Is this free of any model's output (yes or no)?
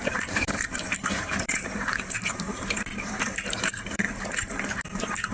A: no